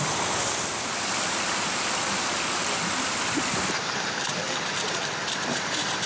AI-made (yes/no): yes